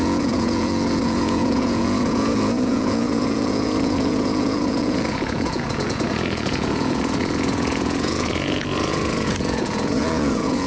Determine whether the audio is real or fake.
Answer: fake